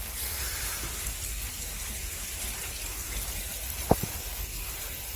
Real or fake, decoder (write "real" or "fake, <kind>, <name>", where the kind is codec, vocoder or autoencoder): real